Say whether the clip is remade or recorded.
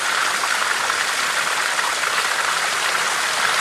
recorded